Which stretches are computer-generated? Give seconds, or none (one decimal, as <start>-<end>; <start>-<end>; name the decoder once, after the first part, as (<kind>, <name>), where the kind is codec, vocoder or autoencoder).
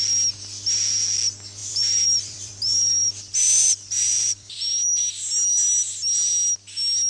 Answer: 1.6-5.0 (vocoder, BigVGAN v2)